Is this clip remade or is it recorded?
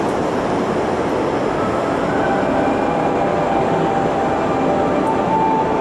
recorded